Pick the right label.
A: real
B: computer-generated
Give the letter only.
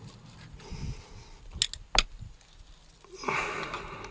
A